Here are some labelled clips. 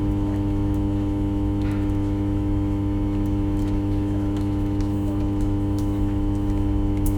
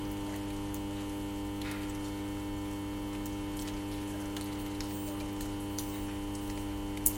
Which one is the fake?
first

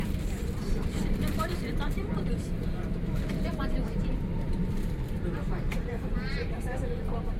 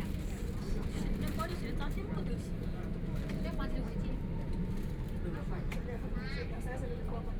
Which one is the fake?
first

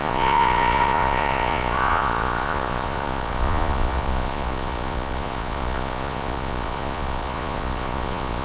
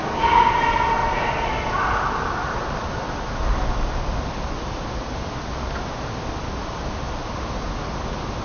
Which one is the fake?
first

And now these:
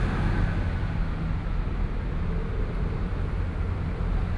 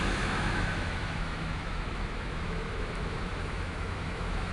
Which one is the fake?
second